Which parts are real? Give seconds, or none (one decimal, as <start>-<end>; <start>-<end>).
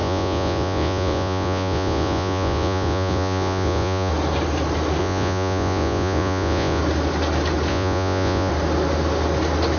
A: 4.1-5.0; 6.8-7.7; 8.5-9.8